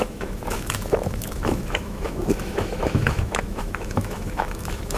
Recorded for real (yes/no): no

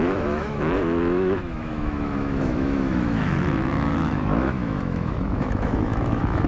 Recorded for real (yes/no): no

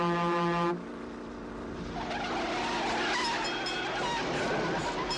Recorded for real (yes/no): yes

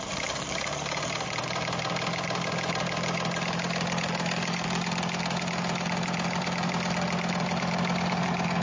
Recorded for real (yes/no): yes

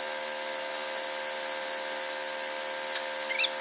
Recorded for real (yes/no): yes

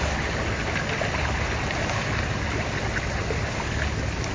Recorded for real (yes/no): yes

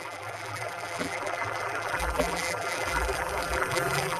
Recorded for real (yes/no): no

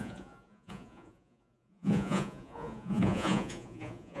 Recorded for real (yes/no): no